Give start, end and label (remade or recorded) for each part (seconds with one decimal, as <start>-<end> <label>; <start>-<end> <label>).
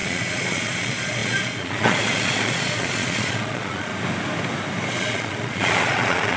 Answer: 0.0-3.9 remade; 3.9-4.9 recorded; 4.9-6.4 remade